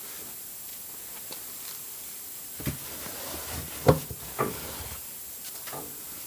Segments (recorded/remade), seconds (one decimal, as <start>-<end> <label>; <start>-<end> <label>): 0.0-6.3 recorded